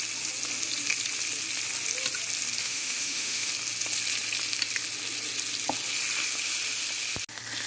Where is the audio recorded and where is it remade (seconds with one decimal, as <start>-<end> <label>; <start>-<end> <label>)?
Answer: 0.0-2.6 recorded; 2.6-3.5 remade; 3.5-7.7 recorded